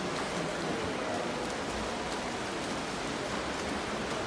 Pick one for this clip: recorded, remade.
recorded